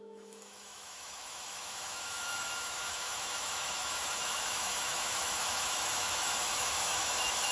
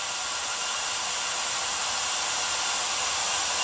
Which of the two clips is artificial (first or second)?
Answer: first